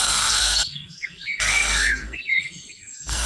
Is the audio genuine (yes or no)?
no